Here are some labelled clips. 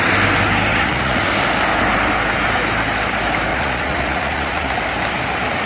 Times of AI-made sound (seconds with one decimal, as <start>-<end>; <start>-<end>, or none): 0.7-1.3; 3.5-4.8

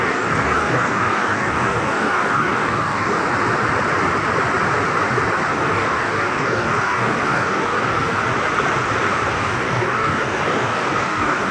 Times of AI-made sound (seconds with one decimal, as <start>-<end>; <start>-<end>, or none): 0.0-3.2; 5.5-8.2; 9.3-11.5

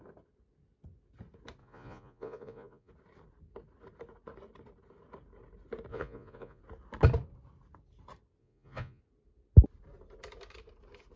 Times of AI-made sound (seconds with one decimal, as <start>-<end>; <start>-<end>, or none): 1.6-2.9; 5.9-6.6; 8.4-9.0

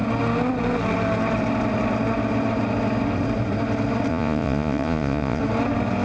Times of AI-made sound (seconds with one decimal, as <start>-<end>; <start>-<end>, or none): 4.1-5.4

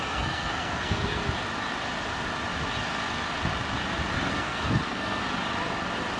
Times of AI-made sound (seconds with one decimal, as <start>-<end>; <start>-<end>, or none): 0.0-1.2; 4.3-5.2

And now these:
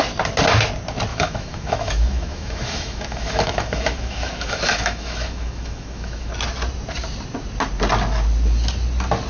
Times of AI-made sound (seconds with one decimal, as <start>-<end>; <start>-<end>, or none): 1.1-6.3

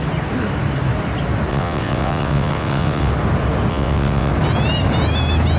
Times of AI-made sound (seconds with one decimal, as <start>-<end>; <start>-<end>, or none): 1.5-3.1; 3.7-4.3

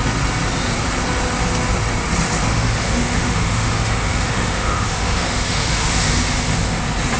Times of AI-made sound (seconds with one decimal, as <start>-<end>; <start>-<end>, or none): 2.5-6.8